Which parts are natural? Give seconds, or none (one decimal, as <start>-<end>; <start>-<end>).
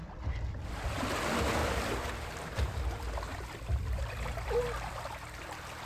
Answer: 0.0-0.5; 1.2-1.6; 2.8-3.3; 4.0-5.9